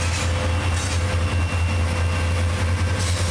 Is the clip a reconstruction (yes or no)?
no